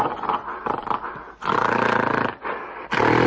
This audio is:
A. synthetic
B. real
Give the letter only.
B